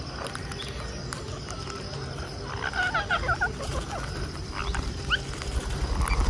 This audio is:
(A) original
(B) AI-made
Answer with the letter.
A